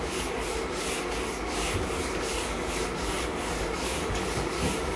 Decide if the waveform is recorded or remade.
remade